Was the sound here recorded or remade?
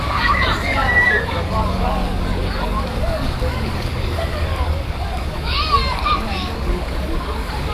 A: remade